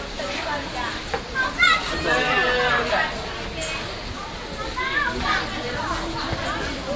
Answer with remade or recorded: recorded